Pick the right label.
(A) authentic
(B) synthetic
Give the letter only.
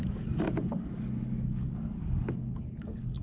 B